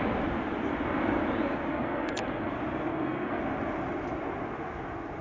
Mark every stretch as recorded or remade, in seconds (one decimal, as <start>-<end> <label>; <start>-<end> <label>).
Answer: 0.0-1.7 recorded; 1.7-2.5 remade; 2.5-2.9 recorded; 2.9-3.4 remade; 3.4-5.2 recorded